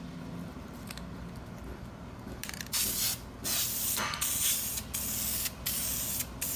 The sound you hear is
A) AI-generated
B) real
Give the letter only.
B